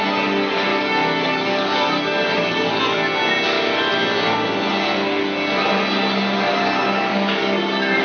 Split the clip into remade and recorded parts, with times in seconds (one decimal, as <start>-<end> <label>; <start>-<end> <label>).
0.0-0.7 recorded; 0.7-2.8 remade; 2.8-7.1 recorded; 7.1-8.0 remade